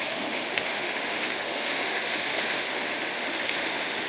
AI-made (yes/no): yes